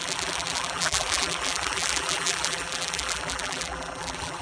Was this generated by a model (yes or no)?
yes